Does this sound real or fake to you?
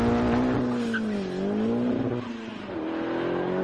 real